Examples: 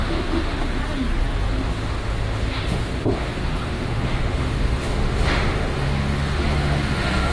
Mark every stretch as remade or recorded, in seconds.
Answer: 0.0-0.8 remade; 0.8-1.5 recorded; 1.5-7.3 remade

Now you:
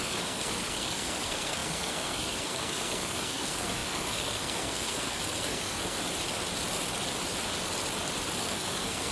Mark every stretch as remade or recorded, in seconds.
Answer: 0.0-6.0 remade; 6.0-8.4 recorded; 8.4-9.1 remade

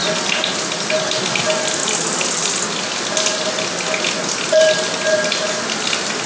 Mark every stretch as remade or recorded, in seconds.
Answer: 0.0-6.3 recorded

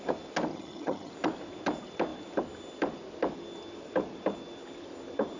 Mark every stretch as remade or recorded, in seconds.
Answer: 0.0-0.5 recorded; 0.5-1.1 remade; 1.1-5.4 recorded

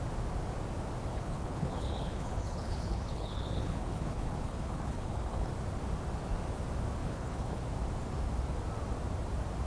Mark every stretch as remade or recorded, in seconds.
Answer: 0.0-1.1 recorded; 1.1-5.5 remade; 5.5-7.0 recorded; 7.0-7.6 remade; 7.6-9.7 recorded

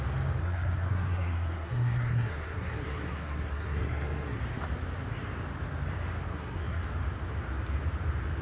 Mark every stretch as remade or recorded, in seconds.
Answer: 0.0-0.4 recorded; 0.4-4.4 remade; 4.4-6.3 recorded; 6.3-6.8 remade; 6.8-8.4 recorded

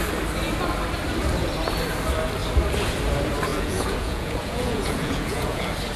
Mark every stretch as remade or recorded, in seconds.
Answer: 0.0-3.5 recorded; 3.5-5.6 remade; 5.6-6.0 recorded